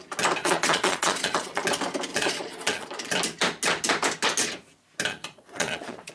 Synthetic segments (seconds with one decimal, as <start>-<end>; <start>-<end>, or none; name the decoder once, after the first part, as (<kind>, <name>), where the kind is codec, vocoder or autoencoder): 0.4-1.6 (vocoder, Vocos); 2.1-2.9; 5.1-6.1